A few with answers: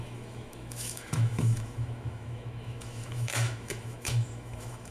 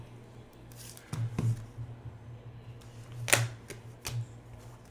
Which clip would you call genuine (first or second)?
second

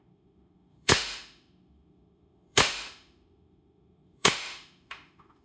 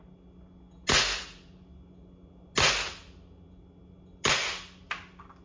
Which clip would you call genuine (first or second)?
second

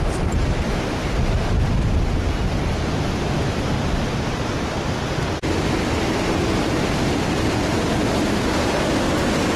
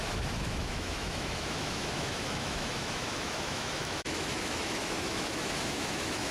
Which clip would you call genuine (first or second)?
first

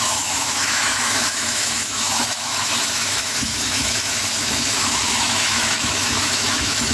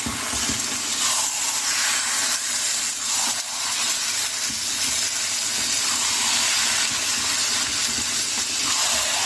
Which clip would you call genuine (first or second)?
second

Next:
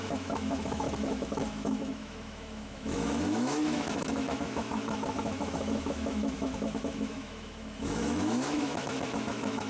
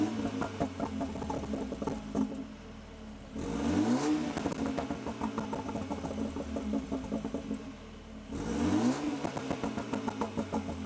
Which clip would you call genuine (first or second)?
second